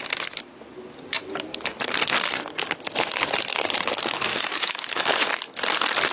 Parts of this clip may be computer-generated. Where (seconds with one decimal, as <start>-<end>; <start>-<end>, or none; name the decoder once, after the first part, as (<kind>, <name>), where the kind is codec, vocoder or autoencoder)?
4.3-5.3 (autoencoder, DAC-VAE)